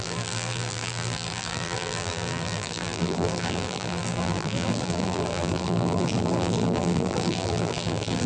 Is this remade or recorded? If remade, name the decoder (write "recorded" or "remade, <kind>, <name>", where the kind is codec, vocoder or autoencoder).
remade, vocoder, BigVGAN v2